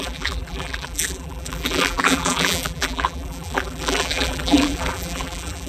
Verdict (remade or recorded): remade